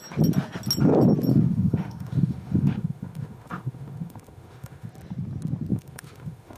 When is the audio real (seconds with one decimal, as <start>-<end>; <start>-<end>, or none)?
0.0-1.3; 4.9-5.7